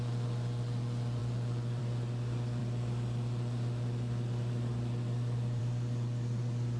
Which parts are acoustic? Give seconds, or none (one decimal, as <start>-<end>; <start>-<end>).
0.0-6.8